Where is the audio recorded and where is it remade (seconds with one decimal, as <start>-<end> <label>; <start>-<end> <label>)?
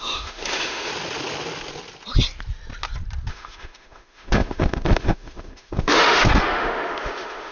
0.0-0.9 remade; 0.9-3.3 recorded; 3.3-7.5 remade